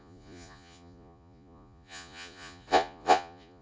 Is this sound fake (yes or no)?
yes